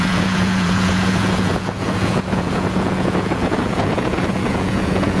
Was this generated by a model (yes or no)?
yes